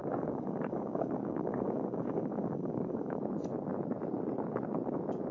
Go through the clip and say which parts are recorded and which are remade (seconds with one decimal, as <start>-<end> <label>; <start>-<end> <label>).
0.0-3.2 remade; 3.2-5.3 recorded